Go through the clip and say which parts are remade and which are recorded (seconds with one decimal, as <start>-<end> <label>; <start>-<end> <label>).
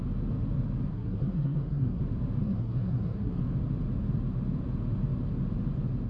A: 0.0-0.9 recorded; 0.9-2.0 remade; 2.0-2.4 recorded; 2.4-3.4 remade; 3.4-6.1 recorded